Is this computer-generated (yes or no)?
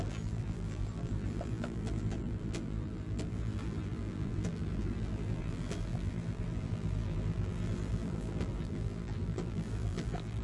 yes